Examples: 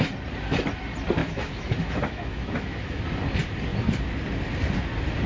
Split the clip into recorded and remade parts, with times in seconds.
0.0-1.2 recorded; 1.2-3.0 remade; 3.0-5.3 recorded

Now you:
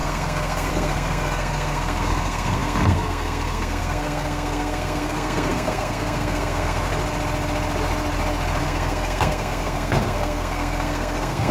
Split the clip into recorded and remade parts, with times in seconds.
0.0-6.9 remade; 6.9-8.6 recorded; 8.6-11.5 remade